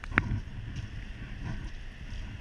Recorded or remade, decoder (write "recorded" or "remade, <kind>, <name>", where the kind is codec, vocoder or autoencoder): recorded